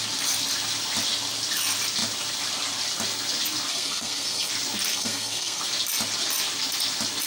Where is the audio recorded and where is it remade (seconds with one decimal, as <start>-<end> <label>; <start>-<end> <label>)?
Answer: 0.0-3.7 recorded; 3.7-4.5 remade; 4.5-4.9 recorded; 4.9-5.6 remade; 5.6-7.3 recorded